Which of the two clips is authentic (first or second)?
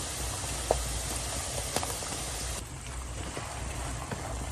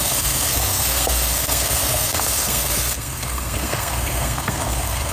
first